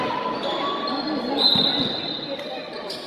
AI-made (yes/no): no